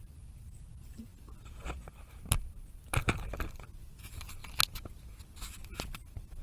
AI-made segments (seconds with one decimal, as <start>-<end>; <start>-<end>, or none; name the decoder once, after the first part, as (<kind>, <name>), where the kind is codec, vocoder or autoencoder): 0.0-1.1 (vocoder, BigVGAN v2); 1.9-4.4; 5.8-6.4

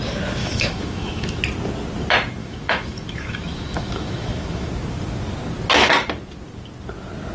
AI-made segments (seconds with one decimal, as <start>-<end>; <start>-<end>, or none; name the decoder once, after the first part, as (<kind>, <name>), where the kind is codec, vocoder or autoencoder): 0.4-1.4 (autoencoder, DAC-VAE); 2.4-4.7

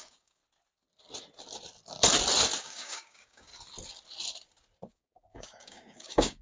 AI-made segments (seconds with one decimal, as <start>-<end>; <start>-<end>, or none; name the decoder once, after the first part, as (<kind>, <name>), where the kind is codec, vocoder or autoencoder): 0.0-0.4 (codec, DAC); 2.6-3.5; 4.9-6.4